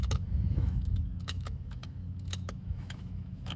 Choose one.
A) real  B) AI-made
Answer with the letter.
B